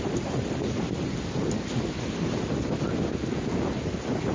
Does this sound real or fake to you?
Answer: real